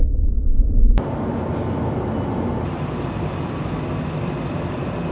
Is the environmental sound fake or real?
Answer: real